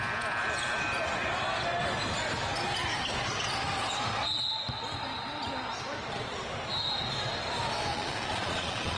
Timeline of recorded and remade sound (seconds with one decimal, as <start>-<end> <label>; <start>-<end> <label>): 0.0-7.9 recorded; 7.9-9.0 remade